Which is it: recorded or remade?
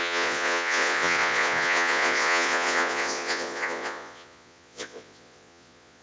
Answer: remade